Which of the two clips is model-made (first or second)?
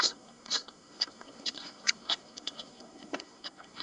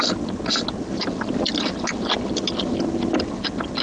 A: first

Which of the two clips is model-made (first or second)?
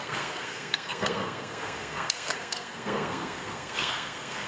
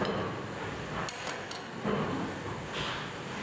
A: first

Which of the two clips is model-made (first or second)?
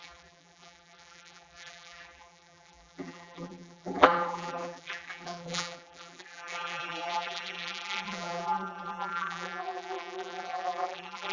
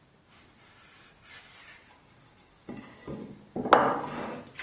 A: first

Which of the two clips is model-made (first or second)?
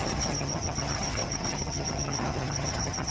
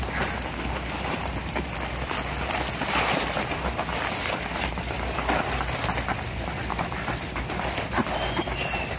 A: first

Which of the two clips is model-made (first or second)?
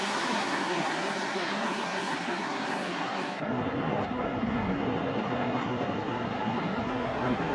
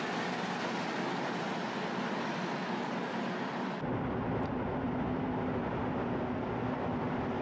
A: first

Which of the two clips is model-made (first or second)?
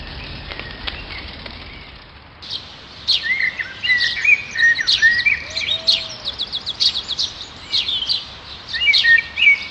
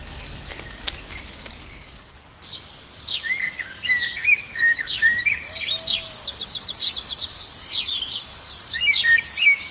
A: second